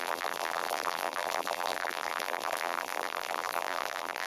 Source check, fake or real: fake